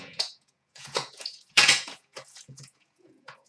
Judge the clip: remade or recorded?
remade